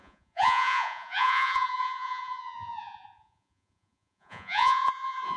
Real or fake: fake